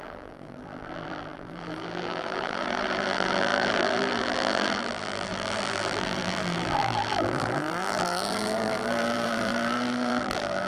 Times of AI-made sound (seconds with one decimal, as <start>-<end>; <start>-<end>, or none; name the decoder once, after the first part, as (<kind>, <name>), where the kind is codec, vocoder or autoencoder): 0.0-10.7 (vocoder, BigVGAN v2)